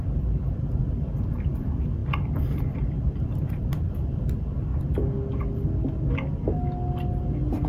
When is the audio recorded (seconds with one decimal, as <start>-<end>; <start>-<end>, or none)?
0.8-1.6; 2.0-2.6; 4.7-7.2